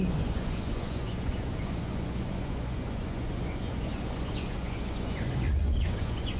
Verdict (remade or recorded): remade